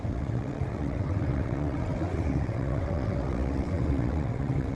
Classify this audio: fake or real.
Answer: fake